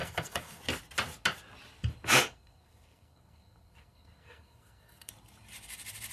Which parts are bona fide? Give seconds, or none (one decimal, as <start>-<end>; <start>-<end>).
0.6-2.2; 5.1-6.1